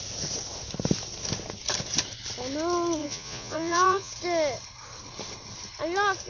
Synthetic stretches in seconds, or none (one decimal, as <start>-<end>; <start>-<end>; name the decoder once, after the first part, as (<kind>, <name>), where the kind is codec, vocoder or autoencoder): 3.0-4.1 (vocoder, Vocos)